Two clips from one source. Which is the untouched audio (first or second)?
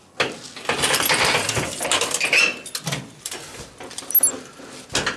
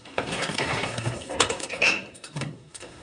first